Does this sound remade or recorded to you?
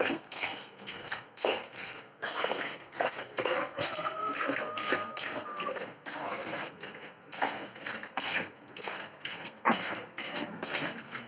remade